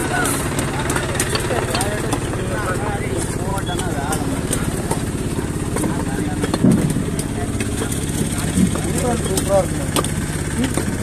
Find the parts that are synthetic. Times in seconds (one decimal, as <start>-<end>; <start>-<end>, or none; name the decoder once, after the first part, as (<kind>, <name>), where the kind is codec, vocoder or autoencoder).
0.0-0.6 (vocoder, BigVGAN v2); 3.5-6.2